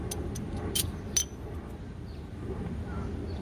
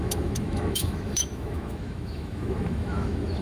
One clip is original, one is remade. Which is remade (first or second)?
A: second